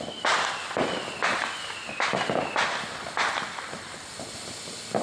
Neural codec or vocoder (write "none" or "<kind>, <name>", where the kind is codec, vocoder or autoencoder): none